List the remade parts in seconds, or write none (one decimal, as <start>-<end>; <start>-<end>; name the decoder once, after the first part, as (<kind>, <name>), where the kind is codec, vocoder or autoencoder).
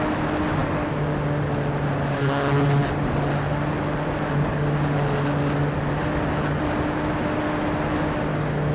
none